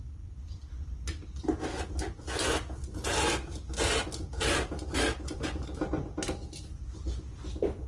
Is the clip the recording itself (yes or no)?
yes